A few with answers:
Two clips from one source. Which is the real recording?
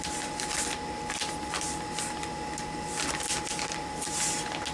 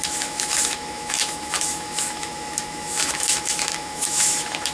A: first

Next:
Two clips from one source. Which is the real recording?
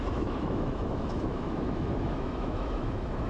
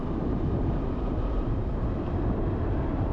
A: second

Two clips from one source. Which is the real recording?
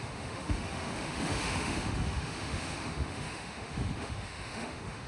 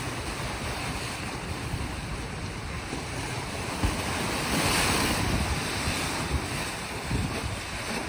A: second